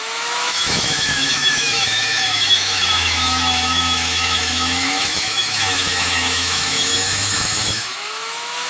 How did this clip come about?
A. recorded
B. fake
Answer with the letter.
B